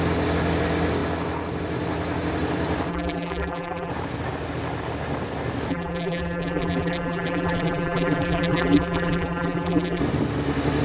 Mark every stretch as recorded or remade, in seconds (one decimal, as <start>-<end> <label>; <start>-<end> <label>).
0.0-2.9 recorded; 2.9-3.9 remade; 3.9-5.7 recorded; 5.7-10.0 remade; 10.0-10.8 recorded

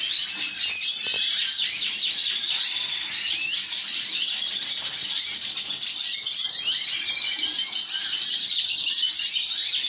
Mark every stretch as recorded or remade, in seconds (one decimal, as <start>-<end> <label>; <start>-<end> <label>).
0.0-4.1 remade; 4.1-5.8 recorded; 5.8-9.9 remade

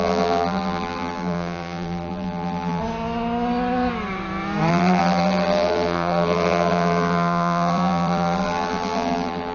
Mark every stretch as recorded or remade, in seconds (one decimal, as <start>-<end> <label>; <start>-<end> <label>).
0.0-2.8 remade; 2.8-4.7 recorded; 4.7-9.5 remade

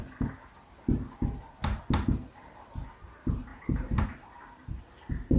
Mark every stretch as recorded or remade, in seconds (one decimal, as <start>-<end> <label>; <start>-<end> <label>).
0.0-3.5 recorded; 3.5-4.0 remade; 4.0-5.4 recorded